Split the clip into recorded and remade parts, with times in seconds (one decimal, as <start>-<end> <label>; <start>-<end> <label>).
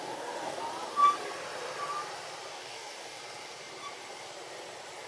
0.0-0.6 remade; 0.6-2.5 recorded; 2.5-3.2 remade; 3.2-5.1 recorded